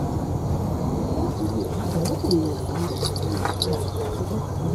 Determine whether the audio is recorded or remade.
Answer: recorded